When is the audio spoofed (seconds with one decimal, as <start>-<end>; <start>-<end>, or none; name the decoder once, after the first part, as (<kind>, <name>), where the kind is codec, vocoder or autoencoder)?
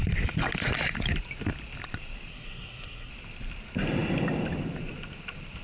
2.3-3.1 (codec, SNAC)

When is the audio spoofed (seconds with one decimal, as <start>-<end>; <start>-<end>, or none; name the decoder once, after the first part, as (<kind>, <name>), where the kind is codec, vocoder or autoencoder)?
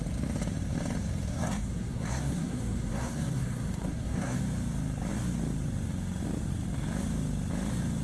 1.3-4.4 (codec, SNAC)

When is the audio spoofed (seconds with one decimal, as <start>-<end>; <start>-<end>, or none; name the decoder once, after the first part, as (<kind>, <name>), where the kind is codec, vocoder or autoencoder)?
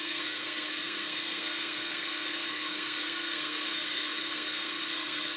0.0-5.4 (codec, SNAC)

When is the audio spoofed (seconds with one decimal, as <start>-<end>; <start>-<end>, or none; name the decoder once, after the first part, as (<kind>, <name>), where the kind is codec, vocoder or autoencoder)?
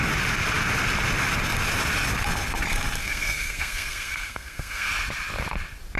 3.0-4.9 (codec, SNAC)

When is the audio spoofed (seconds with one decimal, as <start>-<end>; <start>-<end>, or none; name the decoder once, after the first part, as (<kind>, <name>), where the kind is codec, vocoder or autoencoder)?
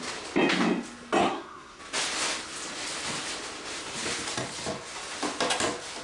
1.2-1.8 (codec, SNAC)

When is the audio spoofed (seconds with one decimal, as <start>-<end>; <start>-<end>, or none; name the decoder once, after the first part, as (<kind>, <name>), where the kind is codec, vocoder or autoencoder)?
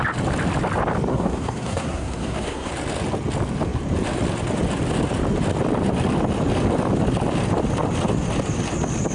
1.1-2.7 (codec, SNAC)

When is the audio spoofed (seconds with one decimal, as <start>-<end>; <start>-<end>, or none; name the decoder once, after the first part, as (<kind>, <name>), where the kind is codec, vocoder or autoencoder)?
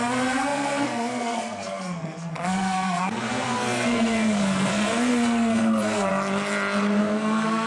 0.0-6.1 (codec, SNAC); 7.0-7.7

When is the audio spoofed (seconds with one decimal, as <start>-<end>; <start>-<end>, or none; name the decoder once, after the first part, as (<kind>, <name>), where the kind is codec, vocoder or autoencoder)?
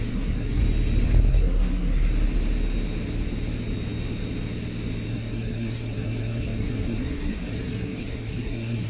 0.0-0.6 (codec, SNAC); 1.3-2.1; 5.1-8.9